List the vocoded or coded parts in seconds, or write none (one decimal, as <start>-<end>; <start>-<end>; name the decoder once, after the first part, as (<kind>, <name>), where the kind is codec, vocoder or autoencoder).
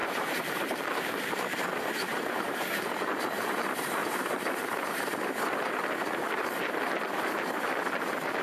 0.0-8.4 (vocoder, BigVGAN v2)